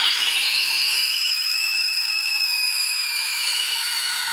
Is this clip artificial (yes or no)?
yes